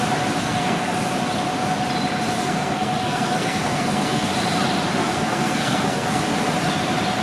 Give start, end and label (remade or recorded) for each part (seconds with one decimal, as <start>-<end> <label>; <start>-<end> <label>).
0.0-0.4 recorded; 0.4-0.9 remade; 0.9-2.3 recorded; 2.3-4.3 remade; 4.3-5.0 recorded; 5.0-6.2 remade; 6.2-7.2 recorded